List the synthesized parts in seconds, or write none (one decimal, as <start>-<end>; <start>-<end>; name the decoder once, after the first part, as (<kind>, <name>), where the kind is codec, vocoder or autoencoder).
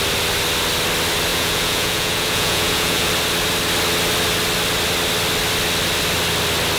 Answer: 1.3-3.1 (vocoder, Vocos)